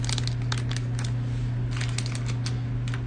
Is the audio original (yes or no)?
yes